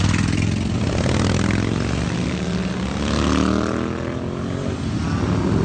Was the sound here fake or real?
real